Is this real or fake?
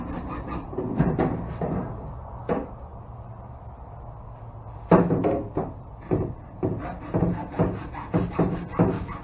real